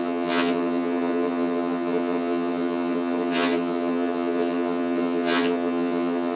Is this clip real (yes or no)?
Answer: no